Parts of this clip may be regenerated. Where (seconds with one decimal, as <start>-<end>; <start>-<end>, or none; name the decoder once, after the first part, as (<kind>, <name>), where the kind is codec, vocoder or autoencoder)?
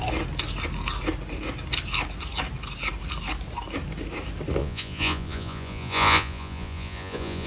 4.6-7.5 (vocoder, Vocos)